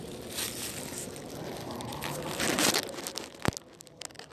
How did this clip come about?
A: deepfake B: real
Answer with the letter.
B